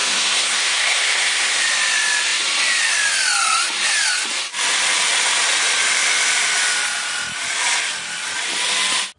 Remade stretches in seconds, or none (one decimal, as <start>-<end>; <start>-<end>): 0.0-1.6